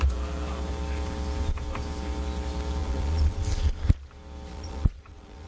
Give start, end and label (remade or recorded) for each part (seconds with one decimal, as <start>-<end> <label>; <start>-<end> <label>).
0.0-2.8 recorded; 2.8-3.4 remade; 3.4-4.5 recorded; 4.5-5.5 remade